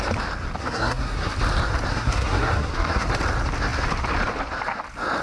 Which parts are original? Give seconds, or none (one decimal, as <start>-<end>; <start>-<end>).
0.0-0.6; 1.3-1.9; 3.1-5.2